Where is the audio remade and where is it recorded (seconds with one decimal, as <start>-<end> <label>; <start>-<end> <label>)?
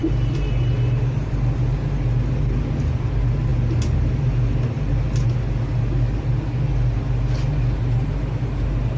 0.0-9.0 recorded